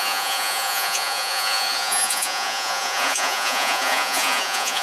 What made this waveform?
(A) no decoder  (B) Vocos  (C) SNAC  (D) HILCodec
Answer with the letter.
B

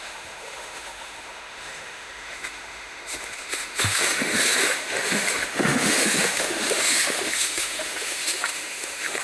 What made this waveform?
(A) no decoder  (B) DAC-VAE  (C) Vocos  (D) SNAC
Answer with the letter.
B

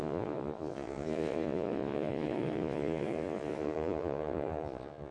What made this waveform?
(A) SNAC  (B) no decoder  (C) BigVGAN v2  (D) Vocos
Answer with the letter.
D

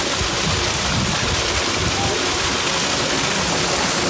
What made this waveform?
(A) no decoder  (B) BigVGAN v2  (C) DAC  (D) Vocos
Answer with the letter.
A